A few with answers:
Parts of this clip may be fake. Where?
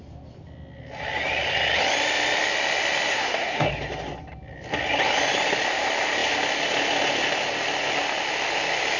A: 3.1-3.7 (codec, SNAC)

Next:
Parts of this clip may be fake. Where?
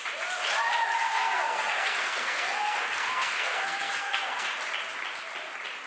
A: 1.0-4.5 (codec, SNAC)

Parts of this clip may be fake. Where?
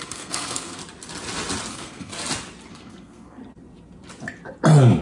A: 0.0-0.8 (codec, SNAC); 1.7-2.1; 2.7-3.4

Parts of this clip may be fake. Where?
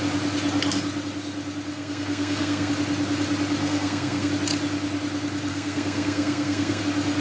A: 1.7-2.7 (codec, SNAC); 3.6-4.3; 5.5-6.8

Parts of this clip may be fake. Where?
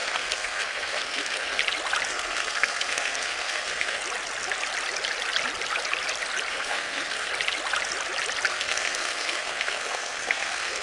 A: 0.0-1.6 (codec, SNAC); 2.1-4.0; 6.5-7.3; 8.5-10.8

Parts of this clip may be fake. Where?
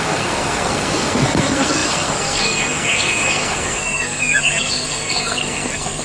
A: 0.0-6.0 (codec, SNAC)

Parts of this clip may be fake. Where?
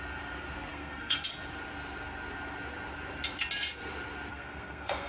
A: 0.7-1.3 (codec, SNAC); 4.3-5.1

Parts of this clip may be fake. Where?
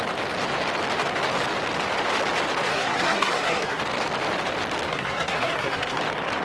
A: 2.7-3.8 (codec, SNAC); 4.9-6.0